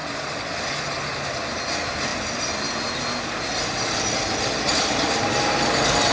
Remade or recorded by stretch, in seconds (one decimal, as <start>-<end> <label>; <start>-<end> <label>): 0.0-6.1 recorded